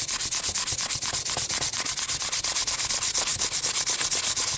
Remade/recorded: recorded